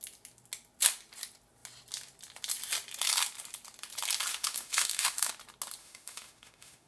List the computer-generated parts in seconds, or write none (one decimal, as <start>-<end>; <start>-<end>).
4.3-5.3; 5.8-6.9